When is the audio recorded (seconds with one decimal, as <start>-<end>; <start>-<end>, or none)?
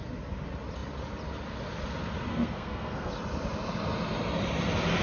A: 0.0-2.3; 3.1-5.0